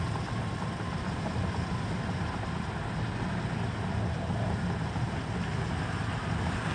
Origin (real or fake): real